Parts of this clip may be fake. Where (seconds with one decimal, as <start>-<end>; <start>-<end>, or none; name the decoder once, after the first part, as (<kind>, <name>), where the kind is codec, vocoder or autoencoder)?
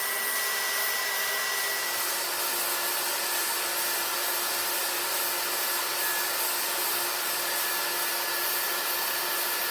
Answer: none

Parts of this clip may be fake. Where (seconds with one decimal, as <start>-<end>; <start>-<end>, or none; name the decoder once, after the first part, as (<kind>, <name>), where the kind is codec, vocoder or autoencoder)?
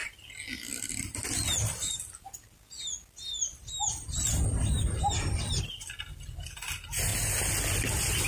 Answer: none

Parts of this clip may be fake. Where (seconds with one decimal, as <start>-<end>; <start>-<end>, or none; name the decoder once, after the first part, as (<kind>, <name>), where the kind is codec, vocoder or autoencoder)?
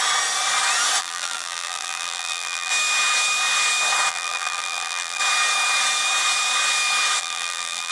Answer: 1.0-2.7 (vocoder, BigVGAN v2); 4.1-5.2; 7.2-7.9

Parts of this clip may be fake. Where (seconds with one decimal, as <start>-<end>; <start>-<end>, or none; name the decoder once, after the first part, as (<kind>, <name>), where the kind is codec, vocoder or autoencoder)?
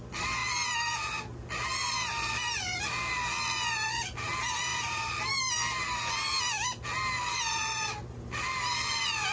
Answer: 4.7-5.3 (vocoder, BigVGAN v2)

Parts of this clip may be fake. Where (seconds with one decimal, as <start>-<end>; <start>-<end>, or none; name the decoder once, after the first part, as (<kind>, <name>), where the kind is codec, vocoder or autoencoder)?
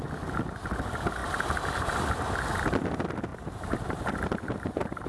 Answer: 3.3-5.1 (vocoder, BigVGAN v2)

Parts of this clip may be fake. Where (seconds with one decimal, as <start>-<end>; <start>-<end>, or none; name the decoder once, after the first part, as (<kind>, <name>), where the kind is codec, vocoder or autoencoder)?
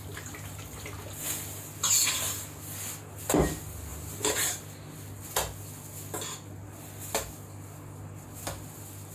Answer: 3.9-4.5 (vocoder, BigVGAN v2)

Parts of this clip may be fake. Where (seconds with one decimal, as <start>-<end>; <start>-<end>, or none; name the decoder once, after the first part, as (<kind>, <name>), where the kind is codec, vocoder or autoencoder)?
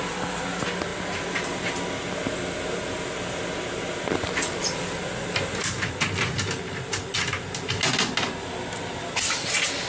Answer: none